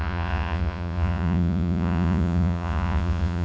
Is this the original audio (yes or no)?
no